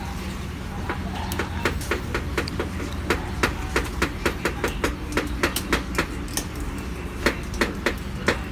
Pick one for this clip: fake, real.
real